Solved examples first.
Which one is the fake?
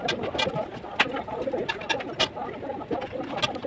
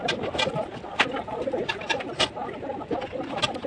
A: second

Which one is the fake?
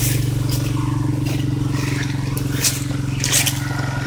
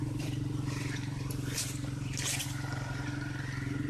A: second